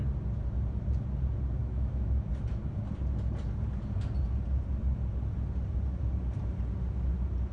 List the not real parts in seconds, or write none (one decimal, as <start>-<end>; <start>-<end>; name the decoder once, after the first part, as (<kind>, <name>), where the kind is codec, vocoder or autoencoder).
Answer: 1.6-2.3 (autoencoder, DAC-VAE)